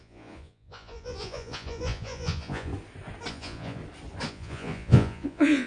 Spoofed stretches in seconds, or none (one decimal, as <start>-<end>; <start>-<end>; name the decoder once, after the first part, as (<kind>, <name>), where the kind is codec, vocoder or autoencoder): 0.0-2.7 (vocoder, Vocos); 3.3-3.8; 4.3-5.7